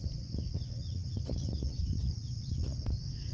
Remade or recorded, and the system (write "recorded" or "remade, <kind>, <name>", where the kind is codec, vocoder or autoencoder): remade, vocoder, Vocos